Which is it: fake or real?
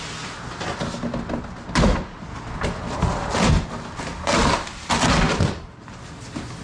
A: real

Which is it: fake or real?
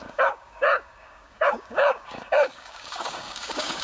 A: fake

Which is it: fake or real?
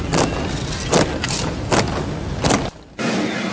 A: real